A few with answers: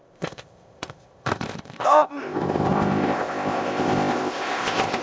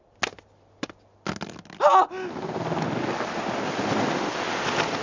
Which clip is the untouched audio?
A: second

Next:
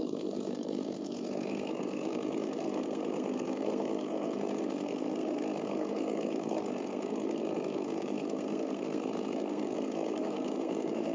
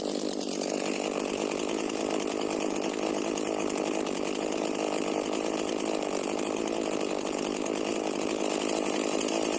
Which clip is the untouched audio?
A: second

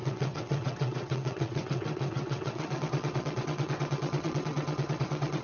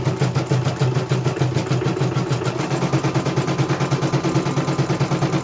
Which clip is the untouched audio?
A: second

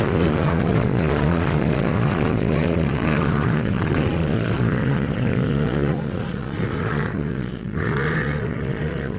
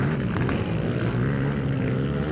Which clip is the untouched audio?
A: second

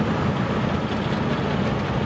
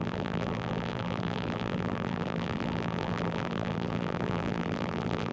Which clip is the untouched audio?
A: first